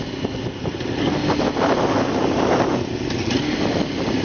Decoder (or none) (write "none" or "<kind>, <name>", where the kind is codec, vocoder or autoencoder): none